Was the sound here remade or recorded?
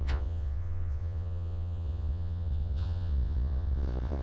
remade